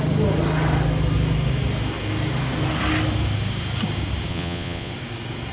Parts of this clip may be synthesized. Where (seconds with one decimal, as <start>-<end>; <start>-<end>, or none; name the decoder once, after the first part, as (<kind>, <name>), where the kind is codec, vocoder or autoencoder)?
4.3-4.9 (vocoder, Vocos)